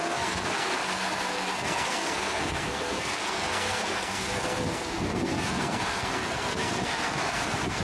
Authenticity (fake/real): fake